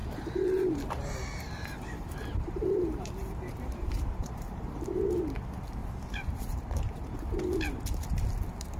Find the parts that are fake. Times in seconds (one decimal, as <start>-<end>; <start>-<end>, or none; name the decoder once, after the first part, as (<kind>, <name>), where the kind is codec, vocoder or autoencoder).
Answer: 0.0-4.8 (vocoder, BigVGAN v2); 5.8-7.2